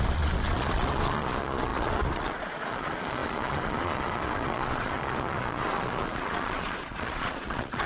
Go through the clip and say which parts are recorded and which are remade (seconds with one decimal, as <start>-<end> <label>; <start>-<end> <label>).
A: 0.0-7.9 remade